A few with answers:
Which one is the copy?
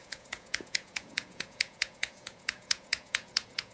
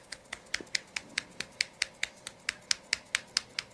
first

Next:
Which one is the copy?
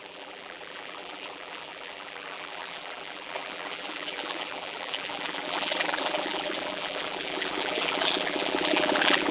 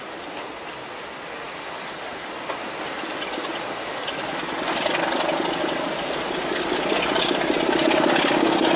first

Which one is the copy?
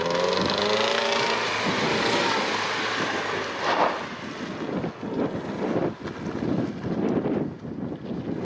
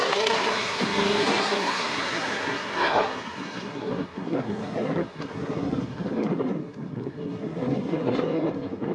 second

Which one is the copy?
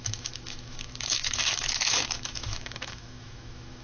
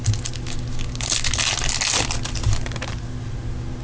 first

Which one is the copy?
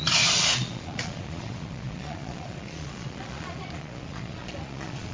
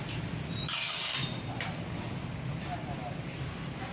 first